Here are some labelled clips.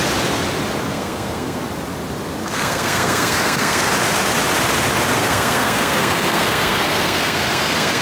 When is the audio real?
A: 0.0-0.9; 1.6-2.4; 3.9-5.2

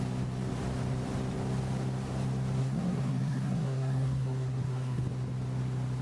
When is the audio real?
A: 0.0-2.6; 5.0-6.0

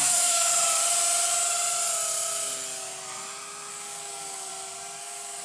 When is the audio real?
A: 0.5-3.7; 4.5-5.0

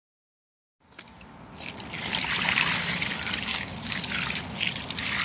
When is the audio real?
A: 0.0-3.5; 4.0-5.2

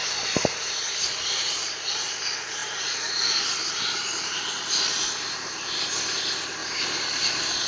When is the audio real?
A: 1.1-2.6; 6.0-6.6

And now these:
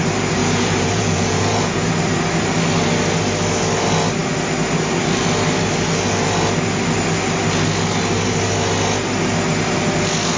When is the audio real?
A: 0.0-0.4; 1.9-10.4

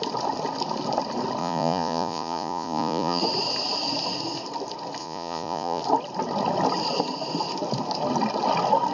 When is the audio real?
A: 0.0-1.4; 3.2-5.0; 5.8-8.9

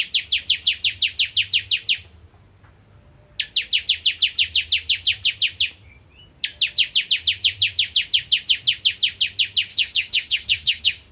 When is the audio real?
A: 0.0-9.7